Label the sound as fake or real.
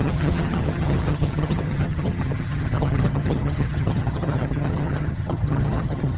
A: fake